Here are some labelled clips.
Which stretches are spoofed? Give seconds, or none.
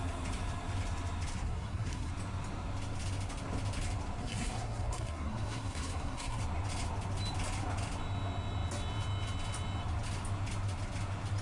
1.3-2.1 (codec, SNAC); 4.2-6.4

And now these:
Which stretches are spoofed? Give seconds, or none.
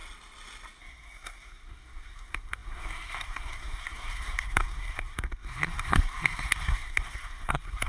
0.8-7.9 (codec, SNAC)